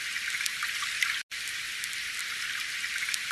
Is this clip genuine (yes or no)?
yes